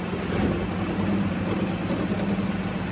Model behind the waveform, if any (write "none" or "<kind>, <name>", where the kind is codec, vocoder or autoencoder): none